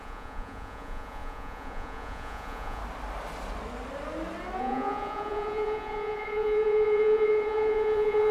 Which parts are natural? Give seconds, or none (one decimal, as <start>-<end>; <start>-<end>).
2.8-4.6